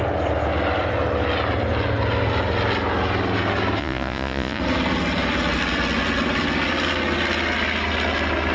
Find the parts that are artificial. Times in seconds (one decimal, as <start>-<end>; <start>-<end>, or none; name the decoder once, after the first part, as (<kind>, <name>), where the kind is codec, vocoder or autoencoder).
3.8-4.6 (vocoder, Vocos)